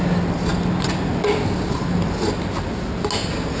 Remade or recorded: recorded